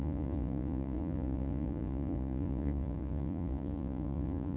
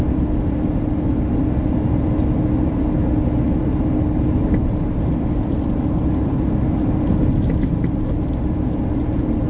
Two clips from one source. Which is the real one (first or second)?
second